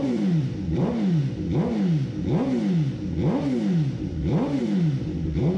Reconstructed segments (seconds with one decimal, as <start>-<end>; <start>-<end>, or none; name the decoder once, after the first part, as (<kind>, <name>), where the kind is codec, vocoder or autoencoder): 0.0-1.2 (vocoder, BigVGAN v2); 4.6-5.6